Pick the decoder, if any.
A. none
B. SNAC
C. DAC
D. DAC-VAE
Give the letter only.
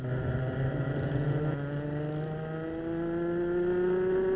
A